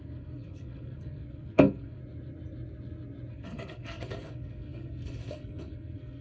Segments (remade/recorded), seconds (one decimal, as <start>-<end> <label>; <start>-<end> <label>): 0.0-2.0 remade; 2.0-3.3 recorded; 3.3-6.2 remade